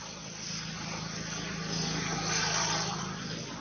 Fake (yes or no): no